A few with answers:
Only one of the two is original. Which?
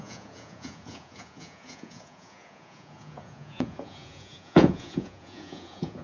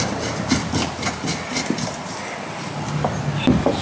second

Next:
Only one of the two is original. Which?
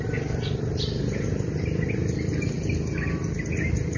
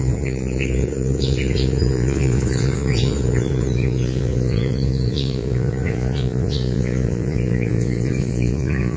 first